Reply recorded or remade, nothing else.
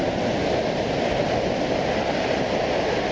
recorded